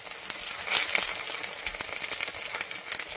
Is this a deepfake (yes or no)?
no